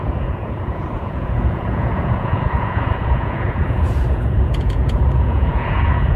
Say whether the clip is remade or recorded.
remade